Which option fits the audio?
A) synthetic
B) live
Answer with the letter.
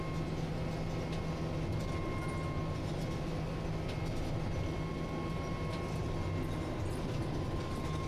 B